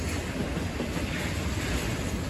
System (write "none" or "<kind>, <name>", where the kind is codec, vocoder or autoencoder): vocoder, BigVGAN v2